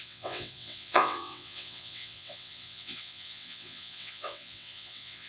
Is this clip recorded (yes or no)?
no